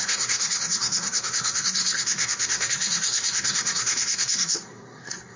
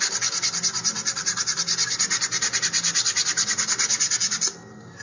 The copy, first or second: first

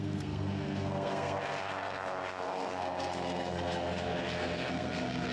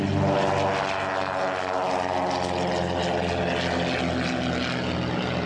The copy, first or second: first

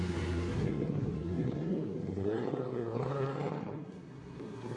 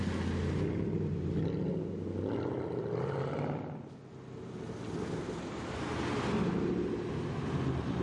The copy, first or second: first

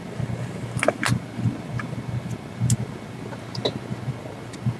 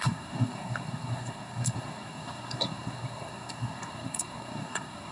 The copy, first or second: second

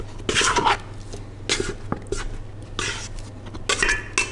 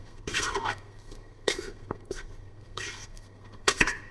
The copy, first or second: second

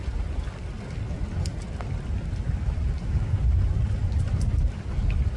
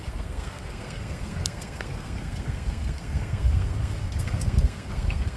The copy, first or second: second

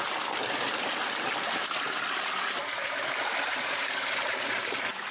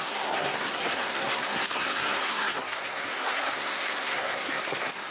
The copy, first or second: second